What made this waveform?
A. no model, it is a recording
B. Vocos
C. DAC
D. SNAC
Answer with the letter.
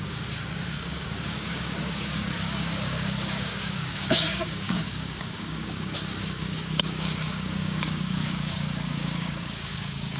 C